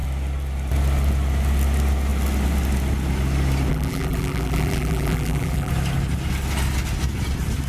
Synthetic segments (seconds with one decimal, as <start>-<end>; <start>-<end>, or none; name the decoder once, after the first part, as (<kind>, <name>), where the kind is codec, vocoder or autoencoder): 3.7-5.7 (vocoder, BigVGAN v2)